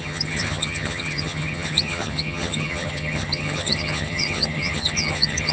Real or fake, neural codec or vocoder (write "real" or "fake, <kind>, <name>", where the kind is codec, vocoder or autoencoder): fake, vocoder, HiFi-GAN